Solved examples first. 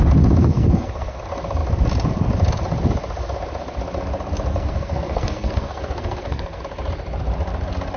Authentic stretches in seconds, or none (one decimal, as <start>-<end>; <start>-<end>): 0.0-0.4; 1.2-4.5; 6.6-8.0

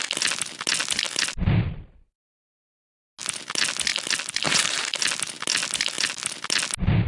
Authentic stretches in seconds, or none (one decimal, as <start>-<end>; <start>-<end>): 0.0-0.8; 1.4-3.9; 5.0-5.5; 6.1-7.1

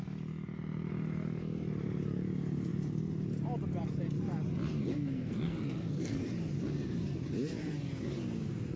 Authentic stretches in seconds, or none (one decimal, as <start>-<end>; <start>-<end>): 0.0-4.9; 6.3-8.8

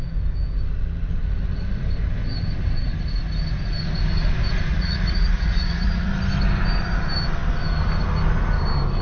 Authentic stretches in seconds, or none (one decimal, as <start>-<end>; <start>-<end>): 0.0-4.7; 6.1-9.0

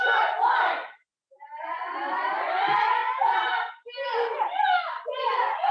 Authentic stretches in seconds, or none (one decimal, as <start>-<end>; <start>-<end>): 0.0-0.8; 2.6-5.7